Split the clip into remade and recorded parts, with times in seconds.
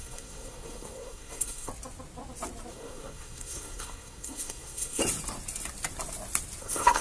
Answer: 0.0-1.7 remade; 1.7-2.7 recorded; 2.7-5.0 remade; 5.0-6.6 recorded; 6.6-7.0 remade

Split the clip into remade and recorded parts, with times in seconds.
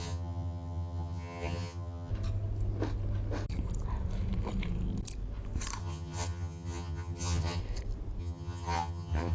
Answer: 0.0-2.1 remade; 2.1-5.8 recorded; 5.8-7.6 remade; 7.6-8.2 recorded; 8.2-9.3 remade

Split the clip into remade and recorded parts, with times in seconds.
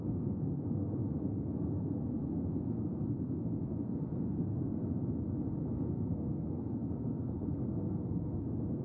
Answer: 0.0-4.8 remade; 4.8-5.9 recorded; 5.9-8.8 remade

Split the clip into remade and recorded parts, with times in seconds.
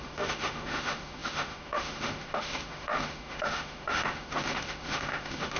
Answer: 0.0-5.6 remade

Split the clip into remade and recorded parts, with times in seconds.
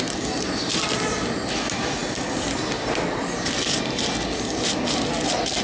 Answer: 0.0-5.6 recorded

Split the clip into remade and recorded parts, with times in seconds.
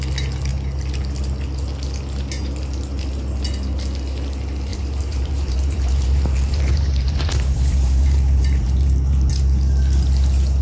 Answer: 0.0-4.7 recorded; 4.7-9.3 remade; 9.3-10.6 recorded